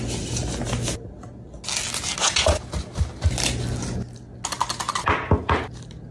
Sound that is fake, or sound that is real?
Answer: real